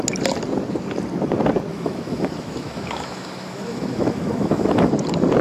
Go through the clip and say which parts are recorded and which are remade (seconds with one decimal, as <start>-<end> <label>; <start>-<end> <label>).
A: 0.0-1.7 recorded; 1.7-4.9 remade; 4.9-5.4 recorded